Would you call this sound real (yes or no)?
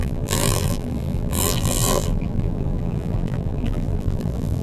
no